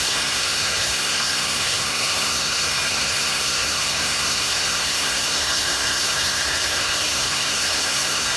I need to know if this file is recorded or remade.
remade